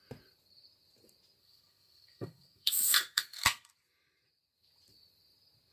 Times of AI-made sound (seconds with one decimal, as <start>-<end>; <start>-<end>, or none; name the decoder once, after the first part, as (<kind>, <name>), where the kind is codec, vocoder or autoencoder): 1.4-3.7 (codec, SNAC)